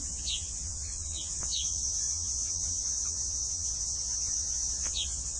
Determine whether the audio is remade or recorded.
remade